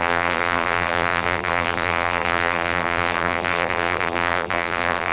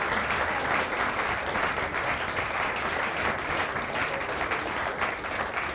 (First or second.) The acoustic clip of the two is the second